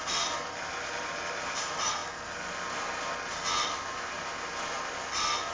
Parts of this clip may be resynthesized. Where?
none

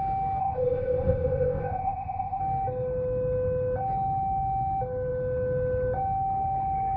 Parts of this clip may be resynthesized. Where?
0.4-2.4 (codec, ZipCodec)